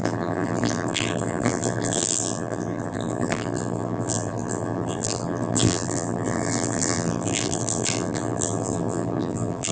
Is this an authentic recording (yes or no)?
no